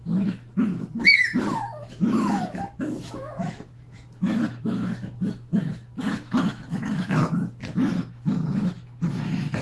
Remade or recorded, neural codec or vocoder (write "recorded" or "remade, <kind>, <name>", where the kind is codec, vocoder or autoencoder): remade, autoencoder, DAC-VAE